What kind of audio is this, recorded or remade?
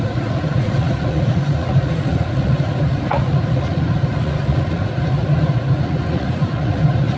remade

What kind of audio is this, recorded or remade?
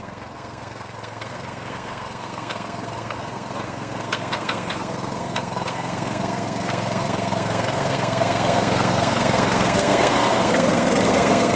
remade